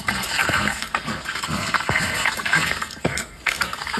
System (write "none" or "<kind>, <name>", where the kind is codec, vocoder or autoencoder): codec, SNAC